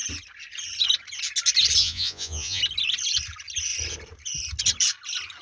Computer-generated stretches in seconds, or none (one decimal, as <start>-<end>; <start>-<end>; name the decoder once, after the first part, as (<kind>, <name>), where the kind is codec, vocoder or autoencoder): 1.8-2.6 (vocoder, Vocos)